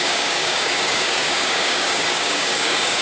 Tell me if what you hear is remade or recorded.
remade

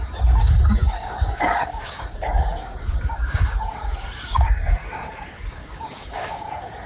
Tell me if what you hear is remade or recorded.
remade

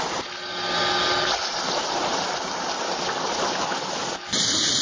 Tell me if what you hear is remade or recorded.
recorded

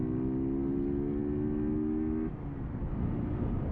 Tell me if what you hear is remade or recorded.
recorded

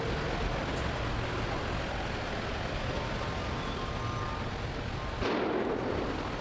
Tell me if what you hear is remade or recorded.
recorded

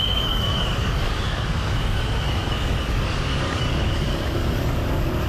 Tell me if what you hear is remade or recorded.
remade